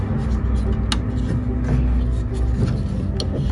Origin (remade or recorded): recorded